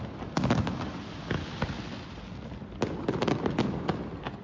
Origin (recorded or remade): recorded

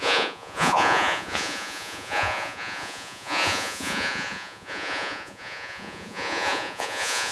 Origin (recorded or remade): remade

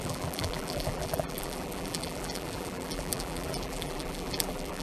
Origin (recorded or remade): remade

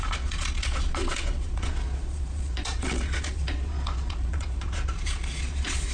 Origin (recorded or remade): remade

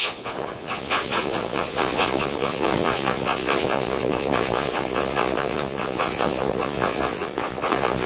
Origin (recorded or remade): remade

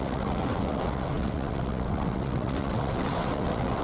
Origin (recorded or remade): remade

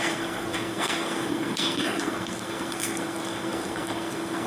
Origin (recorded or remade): remade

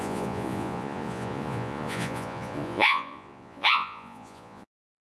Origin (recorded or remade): remade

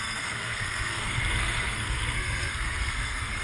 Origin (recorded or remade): remade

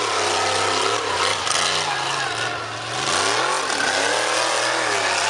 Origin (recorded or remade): recorded